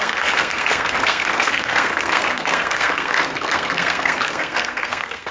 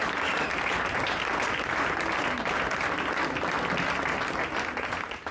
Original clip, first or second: second